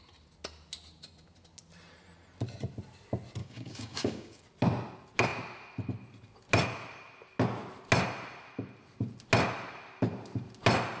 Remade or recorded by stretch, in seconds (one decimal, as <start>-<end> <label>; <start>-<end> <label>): 0.0-3.4 recorded; 3.4-4.4 remade; 4.4-11.0 recorded